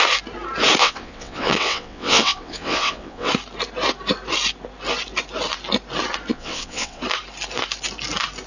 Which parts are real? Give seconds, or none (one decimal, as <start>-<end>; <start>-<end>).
0.0-0.8; 3.3-6.3; 7.0-8.5